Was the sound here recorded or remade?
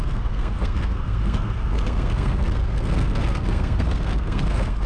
remade